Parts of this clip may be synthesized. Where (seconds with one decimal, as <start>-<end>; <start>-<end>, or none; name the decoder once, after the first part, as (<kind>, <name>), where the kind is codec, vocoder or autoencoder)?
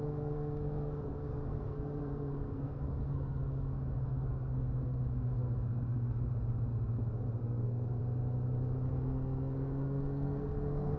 0.0-6.3 (codec, SNAC); 7.4-8.0; 8.9-11.0